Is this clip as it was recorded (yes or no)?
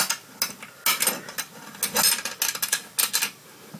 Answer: yes